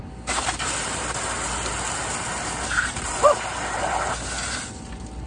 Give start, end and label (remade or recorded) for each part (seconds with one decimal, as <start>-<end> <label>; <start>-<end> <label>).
0.0-5.3 recorded